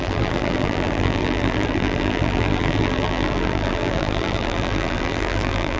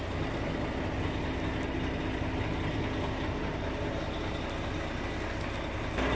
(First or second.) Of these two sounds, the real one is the second